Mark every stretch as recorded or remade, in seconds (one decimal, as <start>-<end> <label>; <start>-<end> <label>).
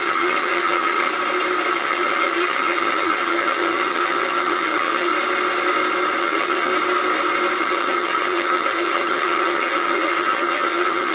0.0-1.1 remade; 1.1-1.7 recorded; 1.7-5.1 remade; 5.1-6.2 recorded; 6.2-6.7 remade; 6.7-7.6 recorded; 7.6-11.1 remade